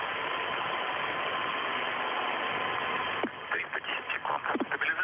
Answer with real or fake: real